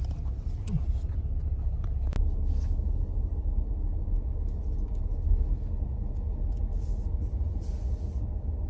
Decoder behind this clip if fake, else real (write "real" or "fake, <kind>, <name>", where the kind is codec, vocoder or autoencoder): real